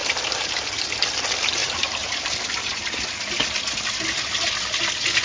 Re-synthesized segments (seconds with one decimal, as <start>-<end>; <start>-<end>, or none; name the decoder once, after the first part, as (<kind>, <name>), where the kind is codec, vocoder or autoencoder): 0.0-0.7 (vocoder, BigVGAN v2); 1.6-2.2